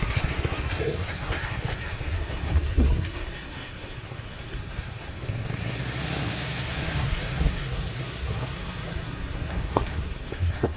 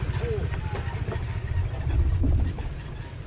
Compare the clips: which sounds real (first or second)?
second